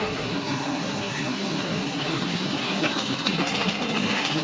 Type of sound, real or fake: fake